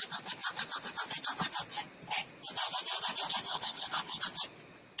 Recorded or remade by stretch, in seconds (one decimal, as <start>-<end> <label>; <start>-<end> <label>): 0.0-3.5 recorded; 3.5-4.2 remade; 4.2-5.0 recorded